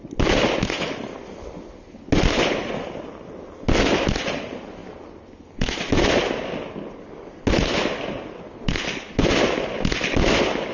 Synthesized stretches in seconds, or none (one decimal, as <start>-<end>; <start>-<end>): none